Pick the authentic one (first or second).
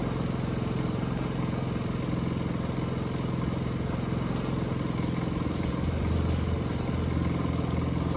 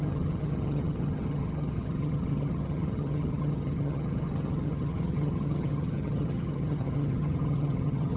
first